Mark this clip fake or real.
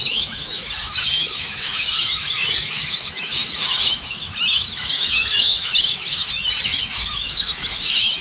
fake